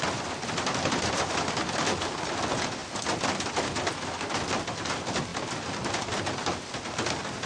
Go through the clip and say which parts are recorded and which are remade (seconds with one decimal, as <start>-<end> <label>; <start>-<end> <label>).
0.0-7.5 recorded